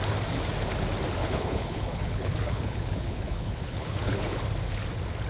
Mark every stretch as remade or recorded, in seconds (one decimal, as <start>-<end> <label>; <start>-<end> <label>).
0.0-1.2 recorded; 1.2-4.4 remade; 4.4-5.3 recorded